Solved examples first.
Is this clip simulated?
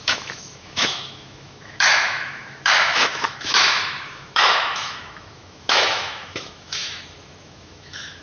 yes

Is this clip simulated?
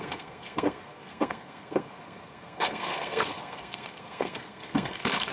yes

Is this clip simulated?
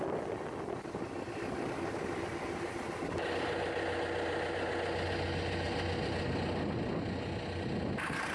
no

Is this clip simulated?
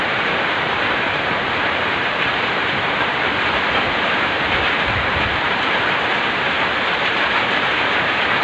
yes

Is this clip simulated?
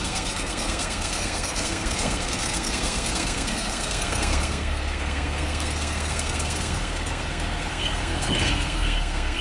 yes